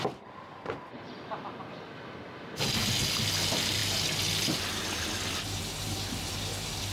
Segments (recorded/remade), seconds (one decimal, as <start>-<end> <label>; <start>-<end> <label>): 0.0-6.9 recorded

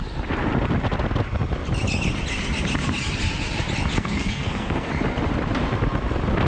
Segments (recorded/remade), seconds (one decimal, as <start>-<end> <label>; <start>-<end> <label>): 0.0-3.9 recorded; 3.9-4.9 remade; 4.9-6.5 recorded

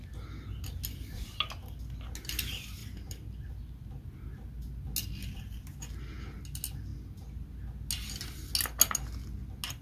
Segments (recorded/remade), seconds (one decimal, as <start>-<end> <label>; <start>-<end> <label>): 0.0-9.8 recorded

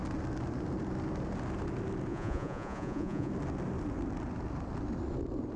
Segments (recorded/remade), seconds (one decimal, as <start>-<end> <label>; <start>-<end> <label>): 0.0-2.1 recorded; 2.1-3.3 remade; 3.3-5.6 recorded

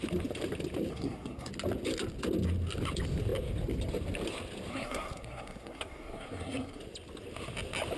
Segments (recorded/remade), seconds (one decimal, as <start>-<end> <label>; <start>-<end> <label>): 0.0-0.9 recorded; 0.9-1.5 remade; 1.5-4.7 recorded; 4.7-6.8 remade; 6.8-8.0 recorded

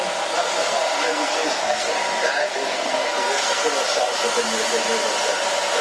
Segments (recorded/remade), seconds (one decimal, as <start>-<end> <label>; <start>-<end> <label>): 0.0-0.6 recorded; 0.6-1.9 remade; 1.9-2.4 recorded; 2.4-3.6 remade; 3.6-5.8 recorded